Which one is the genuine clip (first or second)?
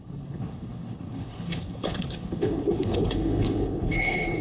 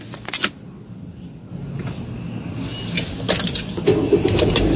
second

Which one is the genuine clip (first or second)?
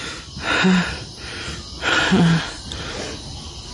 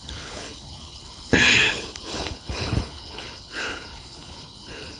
first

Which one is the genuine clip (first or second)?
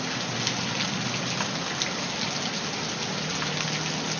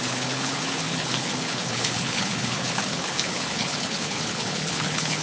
first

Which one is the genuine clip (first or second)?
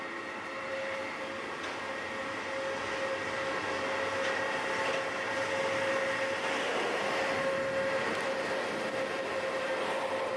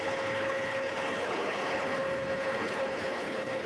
first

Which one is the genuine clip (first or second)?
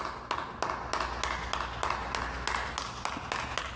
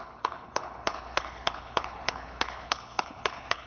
first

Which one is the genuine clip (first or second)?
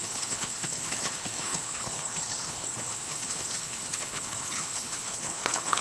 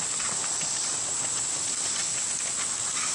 second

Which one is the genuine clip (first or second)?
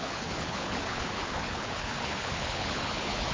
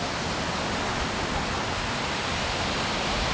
second